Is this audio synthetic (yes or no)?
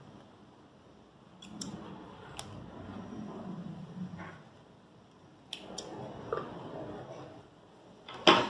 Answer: no